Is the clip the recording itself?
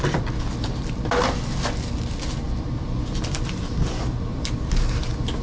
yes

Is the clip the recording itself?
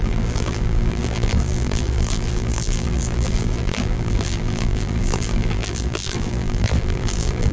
no